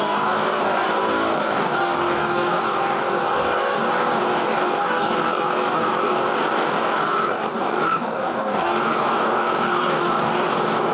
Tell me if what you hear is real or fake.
fake